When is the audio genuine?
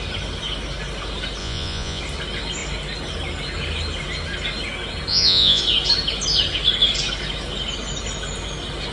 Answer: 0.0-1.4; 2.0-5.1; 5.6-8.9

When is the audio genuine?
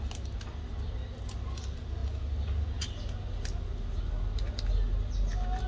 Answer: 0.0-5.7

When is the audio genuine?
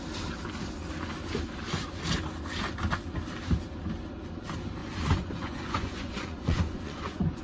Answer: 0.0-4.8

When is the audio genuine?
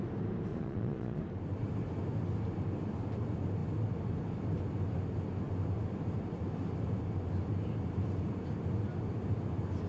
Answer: 0.0-0.5; 1.2-9.9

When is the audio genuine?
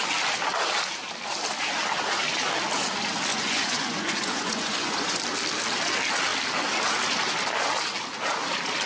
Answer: 0.0-3.3; 5.2-8.9